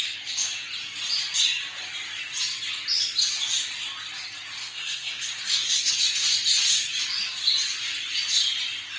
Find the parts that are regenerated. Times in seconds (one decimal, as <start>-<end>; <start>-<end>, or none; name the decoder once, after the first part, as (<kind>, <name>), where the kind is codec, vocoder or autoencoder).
4.6-5.9 (codec, SNAC)